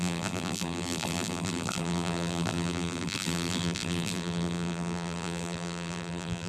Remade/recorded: remade